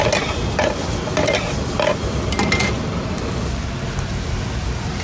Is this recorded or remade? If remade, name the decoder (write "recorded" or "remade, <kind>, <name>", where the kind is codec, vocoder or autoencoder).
recorded